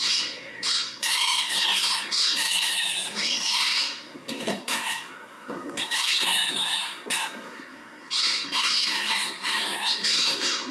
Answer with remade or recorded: remade